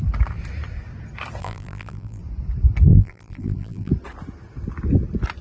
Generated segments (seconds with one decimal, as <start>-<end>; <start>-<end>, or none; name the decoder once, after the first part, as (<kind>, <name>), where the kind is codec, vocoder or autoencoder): 1.4-2.2 (vocoder, BigVGAN v2); 2.9-3.9